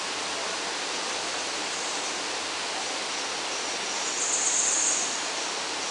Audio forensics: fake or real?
real